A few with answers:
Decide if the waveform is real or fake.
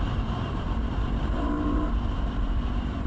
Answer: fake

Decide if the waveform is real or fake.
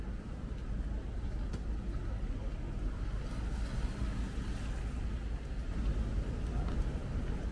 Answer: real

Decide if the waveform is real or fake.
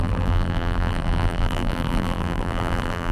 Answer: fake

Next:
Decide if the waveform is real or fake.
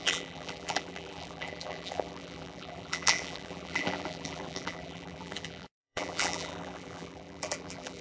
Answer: fake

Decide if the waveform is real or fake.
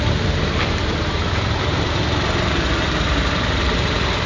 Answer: fake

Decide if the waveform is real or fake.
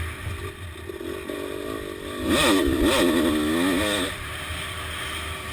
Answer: real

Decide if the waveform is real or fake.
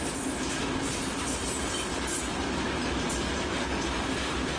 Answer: real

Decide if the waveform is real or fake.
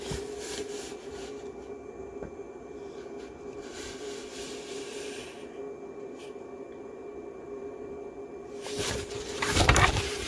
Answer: fake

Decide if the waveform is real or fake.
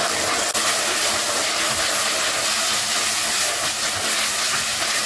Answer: real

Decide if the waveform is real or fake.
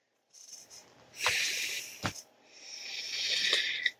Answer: real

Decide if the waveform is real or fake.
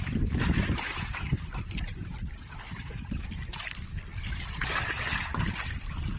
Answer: fake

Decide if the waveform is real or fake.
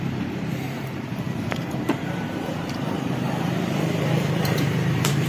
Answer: fake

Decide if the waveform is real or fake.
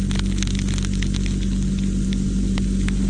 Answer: real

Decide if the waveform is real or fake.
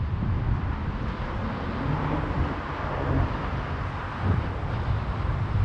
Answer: fake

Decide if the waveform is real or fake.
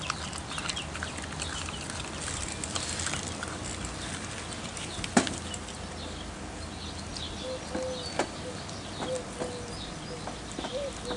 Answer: real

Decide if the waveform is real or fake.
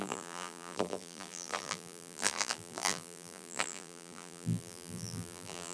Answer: fake